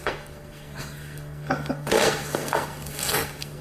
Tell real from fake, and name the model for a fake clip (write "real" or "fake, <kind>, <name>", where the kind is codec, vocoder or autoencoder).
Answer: fake, codec, SNAC